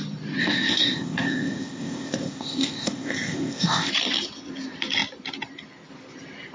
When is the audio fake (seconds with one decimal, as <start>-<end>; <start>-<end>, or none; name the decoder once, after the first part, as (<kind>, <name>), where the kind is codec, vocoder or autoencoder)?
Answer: 0.4-3.9 (codec, ZipCodec)